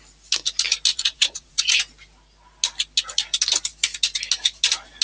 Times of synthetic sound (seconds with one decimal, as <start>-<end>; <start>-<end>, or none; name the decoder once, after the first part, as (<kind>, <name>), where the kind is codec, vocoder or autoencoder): 0.9-1.8 (vocoder, Vocos)